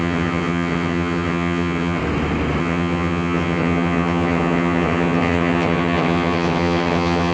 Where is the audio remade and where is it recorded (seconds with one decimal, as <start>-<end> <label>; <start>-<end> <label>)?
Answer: 0.0-2.0 remade; 2.0-2.6 recorded; 2.6-7.3 remade